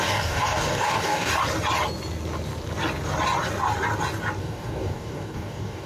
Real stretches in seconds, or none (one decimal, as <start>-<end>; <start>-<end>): 1.3-4.4